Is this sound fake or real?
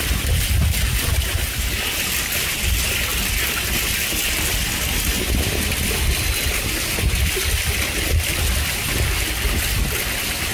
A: real